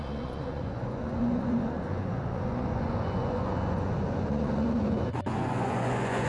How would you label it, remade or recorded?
remade